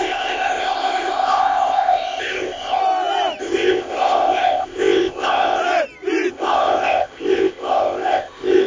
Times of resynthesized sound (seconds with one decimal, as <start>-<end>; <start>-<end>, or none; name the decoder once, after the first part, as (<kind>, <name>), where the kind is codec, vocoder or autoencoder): 0.0-2.8 (codec, ZipCodec); 3.4-5.6; 6.3-8.7